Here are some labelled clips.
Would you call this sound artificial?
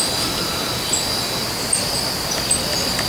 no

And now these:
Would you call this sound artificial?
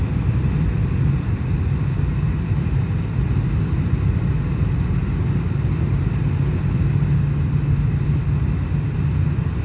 no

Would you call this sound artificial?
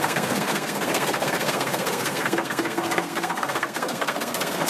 yes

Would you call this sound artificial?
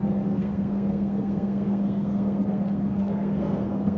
yes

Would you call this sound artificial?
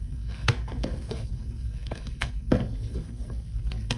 yes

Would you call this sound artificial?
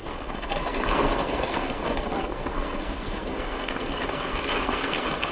yes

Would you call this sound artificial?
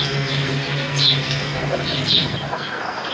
yes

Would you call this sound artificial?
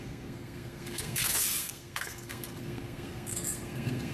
yes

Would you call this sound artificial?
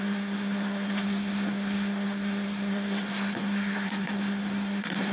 yes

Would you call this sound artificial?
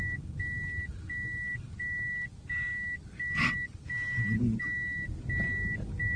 no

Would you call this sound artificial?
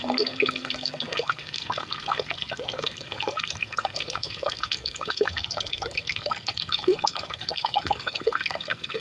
yes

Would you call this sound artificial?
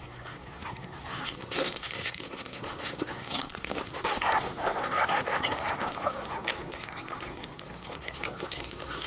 yes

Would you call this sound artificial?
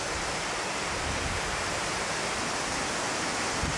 no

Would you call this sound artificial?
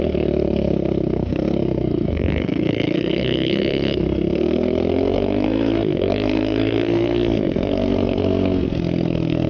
yes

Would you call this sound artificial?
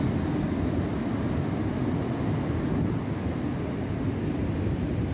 no